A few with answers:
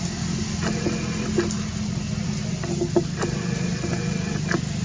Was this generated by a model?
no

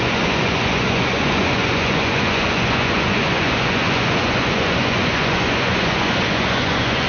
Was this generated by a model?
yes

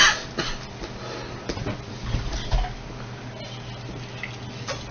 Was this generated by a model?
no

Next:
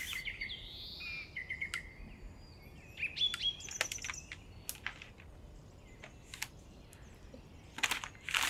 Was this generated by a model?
no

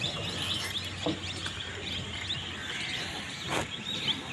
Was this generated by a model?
no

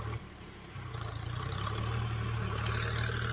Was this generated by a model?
no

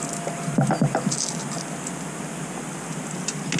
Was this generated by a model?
no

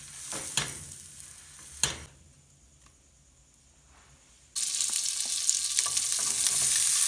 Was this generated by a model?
no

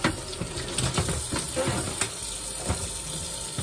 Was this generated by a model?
no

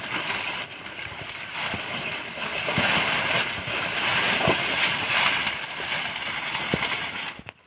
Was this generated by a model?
no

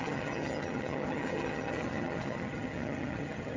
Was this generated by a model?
yes